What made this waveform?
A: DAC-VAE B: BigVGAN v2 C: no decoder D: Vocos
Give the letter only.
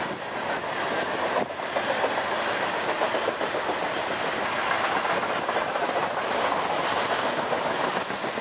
C